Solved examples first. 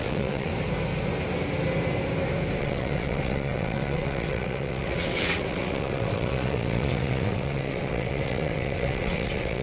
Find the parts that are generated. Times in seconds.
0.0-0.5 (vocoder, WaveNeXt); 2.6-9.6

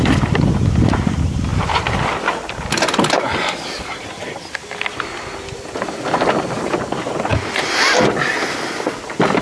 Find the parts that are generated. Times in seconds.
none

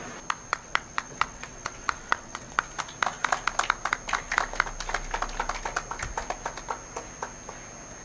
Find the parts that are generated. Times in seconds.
0.5-2.6 (vocoder, WaveNeXt)